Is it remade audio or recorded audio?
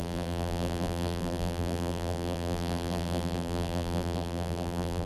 remade